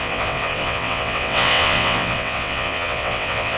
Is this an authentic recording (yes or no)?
no